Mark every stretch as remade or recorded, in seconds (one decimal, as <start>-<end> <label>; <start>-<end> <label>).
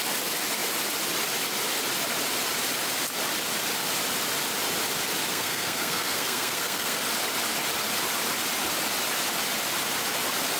0.0-5.3 recorded; 5.3-7.0 remade; 7.0-10.6 recorded